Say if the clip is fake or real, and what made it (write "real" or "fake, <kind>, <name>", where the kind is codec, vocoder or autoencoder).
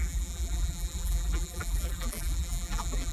fake, vocoder, BigVGAN v2